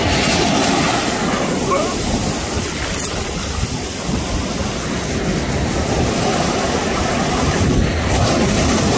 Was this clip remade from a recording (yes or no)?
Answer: no